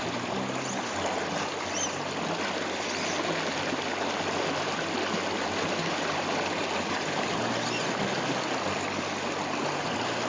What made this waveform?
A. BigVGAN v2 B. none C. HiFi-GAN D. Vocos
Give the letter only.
B